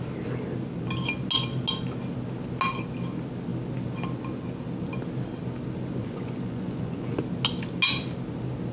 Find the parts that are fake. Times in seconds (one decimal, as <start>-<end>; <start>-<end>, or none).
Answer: 6.0-7.2